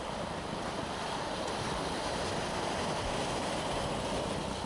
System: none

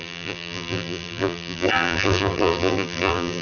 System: vocoder, BigVGAN v2